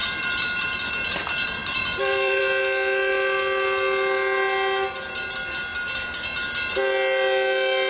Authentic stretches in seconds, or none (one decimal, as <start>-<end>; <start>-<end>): 0.9-1.6; 2.4-7.9